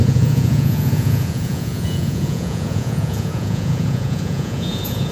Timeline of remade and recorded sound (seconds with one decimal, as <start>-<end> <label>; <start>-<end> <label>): 0.0-5.1 remade